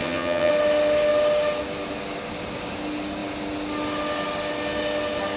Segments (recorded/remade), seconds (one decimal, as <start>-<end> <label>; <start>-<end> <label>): 0.0-0.5 remade; 0.5-5.4 recorded